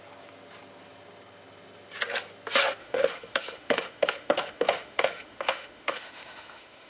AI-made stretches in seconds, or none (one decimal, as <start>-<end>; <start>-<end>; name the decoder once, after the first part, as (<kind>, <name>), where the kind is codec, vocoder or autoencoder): 2.8-6.9 (autoencoder, DAC-VAE)